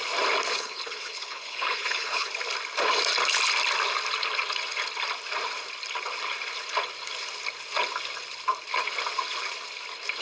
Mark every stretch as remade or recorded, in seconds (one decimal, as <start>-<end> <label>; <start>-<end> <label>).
0.0-0.5 recorded; 0.5-2.3 remade; 2.3-10.2 recorded